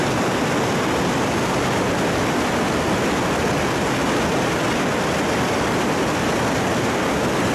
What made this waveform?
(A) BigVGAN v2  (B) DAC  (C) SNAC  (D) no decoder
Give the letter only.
D